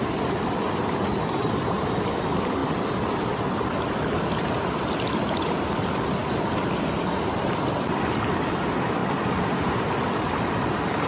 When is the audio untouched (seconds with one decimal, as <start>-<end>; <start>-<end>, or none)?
2.6-5.3; 6.2-7.0; 9.0-11.1